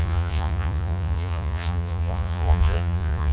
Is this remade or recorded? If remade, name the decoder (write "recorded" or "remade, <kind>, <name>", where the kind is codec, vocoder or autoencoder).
remade, vocoder, Vocos